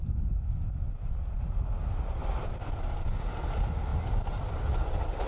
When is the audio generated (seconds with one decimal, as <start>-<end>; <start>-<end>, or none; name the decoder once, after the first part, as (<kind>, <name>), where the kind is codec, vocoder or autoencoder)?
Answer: none